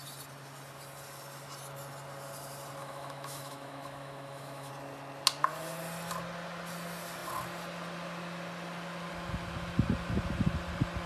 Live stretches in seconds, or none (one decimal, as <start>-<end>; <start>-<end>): 0.0-2.8; 4.7-11.1